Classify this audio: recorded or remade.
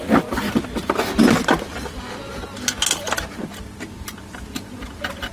recorded